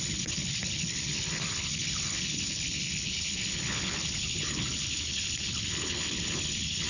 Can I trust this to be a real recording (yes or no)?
no